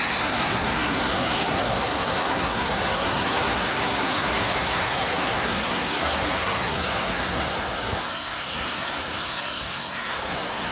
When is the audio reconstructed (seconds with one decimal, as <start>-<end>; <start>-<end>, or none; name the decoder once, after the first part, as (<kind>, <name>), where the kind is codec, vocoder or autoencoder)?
0.0-10.7 (codec, SNAC)